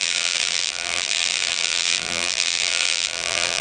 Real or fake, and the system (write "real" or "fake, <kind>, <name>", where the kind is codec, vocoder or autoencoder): fake, vocoder, BigVGAN v2